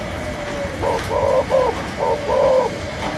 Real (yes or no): yes